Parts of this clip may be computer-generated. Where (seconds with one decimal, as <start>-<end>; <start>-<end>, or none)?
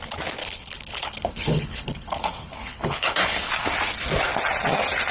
0.4-3.5